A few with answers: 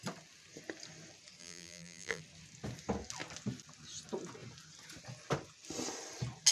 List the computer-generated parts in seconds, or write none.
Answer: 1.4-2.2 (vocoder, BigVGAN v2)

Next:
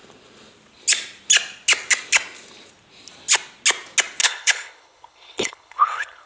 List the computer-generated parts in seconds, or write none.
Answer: 4.2-6.3 (codec, HILCodec)

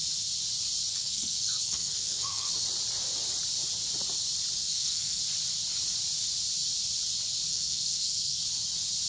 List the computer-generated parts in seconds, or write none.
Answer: 0.9-2.5 (codec, SNAC); 4.6-5.2; 7.5-8.4

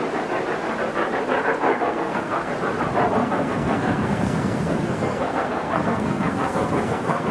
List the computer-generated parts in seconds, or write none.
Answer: 1.7-2.5 (codec, SNAC); 3.2-7.3

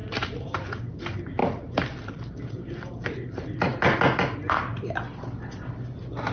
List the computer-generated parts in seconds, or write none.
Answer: 0.0-3.7 (vocoder, BigVGAN v2); 4.3-4.7

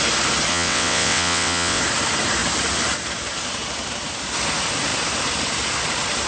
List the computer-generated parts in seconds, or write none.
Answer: 0.5-1.8 (vocoder, WaveNeXt)